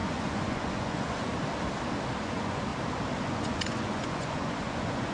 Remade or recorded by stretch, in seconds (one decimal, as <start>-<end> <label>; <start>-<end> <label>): 0.0-1.3 remade; 1.3-2.2 recorded; 2.2-2.7 remade; 2.7-3.2 recorded; 3.2-5.1 remade